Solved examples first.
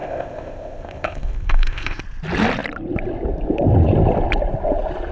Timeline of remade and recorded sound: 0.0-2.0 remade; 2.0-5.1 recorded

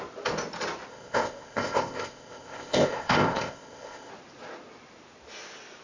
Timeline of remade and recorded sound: 0.0-0.9 recorded; 0.9-4.1 remade; 4.1-5.8 recorded